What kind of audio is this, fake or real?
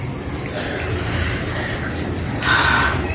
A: real